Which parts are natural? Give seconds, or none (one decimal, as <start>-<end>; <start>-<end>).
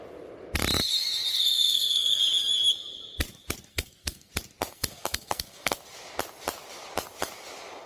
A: 0.0-1.3; 2.2-3.7; 4.3-4.7; 5.8-7.9